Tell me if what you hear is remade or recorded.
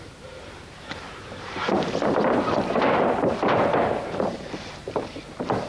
remade